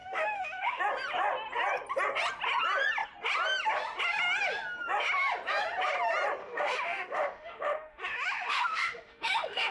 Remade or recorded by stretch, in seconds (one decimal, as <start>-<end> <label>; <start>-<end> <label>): 0.0-0.8 remade; 0.8-6.4 recorded; 6.4-9.7 remade